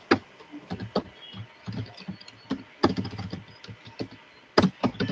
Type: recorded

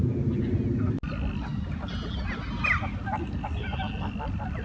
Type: recorded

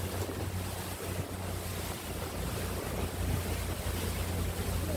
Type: recorded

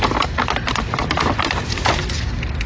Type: recorded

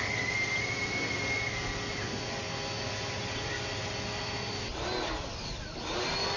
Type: recorded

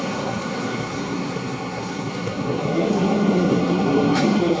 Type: remade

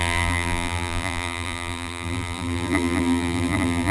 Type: remade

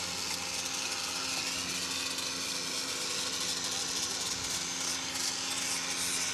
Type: recorded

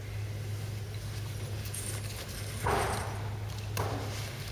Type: recorded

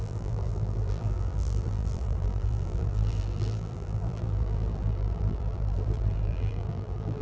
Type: remade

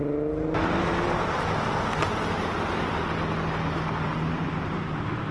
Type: recorded